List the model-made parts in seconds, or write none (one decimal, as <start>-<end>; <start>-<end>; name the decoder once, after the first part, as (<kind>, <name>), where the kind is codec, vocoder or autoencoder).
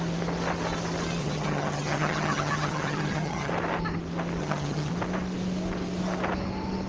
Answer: 1.2-3.5 (vocoder, HiFi-GAN); 4.4-4.9